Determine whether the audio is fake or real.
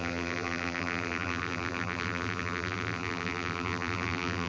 fake